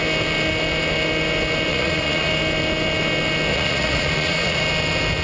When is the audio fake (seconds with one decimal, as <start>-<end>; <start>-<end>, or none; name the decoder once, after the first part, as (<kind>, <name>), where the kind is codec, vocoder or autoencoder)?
1.7-2.3 (vocoder, Vocos); 3.5-4.6

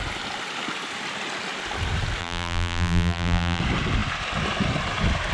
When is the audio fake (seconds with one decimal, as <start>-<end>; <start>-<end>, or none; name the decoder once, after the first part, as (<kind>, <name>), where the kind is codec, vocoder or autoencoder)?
2.2-3.6 (vocoder, BigVGAN v2)

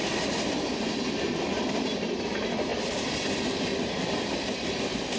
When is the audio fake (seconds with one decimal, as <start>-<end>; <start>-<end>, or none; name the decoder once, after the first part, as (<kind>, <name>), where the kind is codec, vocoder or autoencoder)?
none

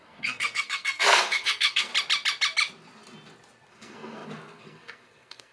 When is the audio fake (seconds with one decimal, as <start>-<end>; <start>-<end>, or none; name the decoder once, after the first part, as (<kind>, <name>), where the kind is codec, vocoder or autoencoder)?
0.0-1.9 (codec, SNAC); 3.7-5.5